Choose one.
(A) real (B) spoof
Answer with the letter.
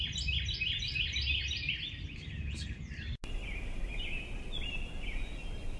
A